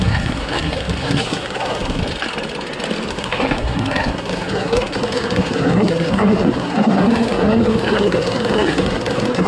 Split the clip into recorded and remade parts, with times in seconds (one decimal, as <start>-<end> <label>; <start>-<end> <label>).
0.0-2.0 remade; 2.0-3.1 recorded; 3.1-9.5 remade